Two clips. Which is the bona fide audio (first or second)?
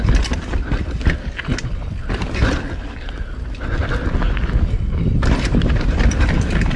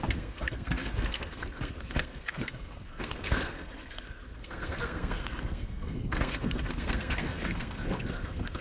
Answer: first